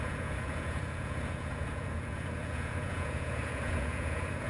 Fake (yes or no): yes